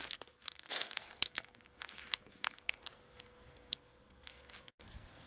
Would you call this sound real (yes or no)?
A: no